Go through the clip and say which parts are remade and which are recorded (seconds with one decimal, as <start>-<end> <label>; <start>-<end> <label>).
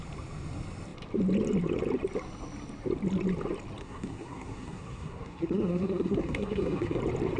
0.0-3.8 recorded; 3.8-7.0 remade; 7.0-7.4 recorded